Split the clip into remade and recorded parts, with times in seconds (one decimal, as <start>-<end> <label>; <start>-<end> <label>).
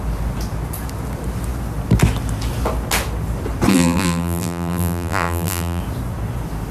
0.0-3.7 recorded; 3.7-5.8 remade; 5.8-6.7 recorded